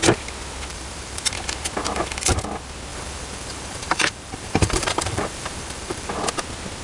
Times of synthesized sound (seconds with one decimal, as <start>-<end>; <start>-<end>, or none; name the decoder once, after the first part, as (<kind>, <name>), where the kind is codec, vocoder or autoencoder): 0.7-1.3 (vocoder, BigVGAN v2); 2.9-6.1

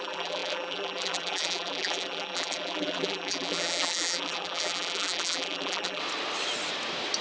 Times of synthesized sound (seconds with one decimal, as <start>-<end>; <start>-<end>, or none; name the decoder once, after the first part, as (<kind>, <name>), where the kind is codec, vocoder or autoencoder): 0.0-6.0 (vocoder, BigVGAN v2)

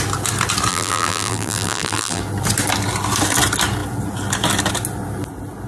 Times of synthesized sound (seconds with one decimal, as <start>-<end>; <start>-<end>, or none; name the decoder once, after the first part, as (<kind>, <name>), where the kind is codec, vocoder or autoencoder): 0.7-2.2 (vocoder, BigVGAN v2)

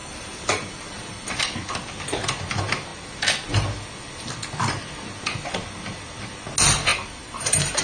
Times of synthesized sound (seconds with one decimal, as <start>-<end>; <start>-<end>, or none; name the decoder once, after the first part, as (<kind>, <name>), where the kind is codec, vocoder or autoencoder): 0.0-1.4 (vocoder, BigVGAN v2); 6.9-7.8

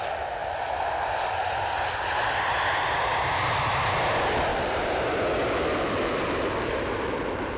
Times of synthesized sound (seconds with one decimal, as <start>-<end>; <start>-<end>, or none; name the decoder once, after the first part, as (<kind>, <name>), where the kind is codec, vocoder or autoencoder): 4.5-5.2 (vocoder, BigVGAN v2)

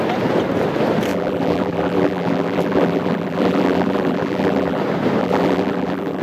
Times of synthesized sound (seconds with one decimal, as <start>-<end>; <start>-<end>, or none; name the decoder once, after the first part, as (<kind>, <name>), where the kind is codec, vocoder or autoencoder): 1.1-4.8 (vocoder, BigVGAN v2); 5.2-6.2

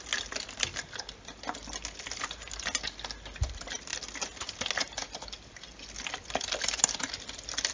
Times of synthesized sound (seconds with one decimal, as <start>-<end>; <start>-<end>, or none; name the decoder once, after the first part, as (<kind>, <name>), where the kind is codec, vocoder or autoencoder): 5.0-6.8 (vocoder, BigVGAN v2)